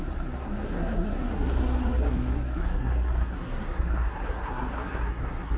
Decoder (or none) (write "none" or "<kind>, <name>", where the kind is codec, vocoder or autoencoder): codec, SNAC